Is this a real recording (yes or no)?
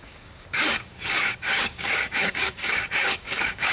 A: no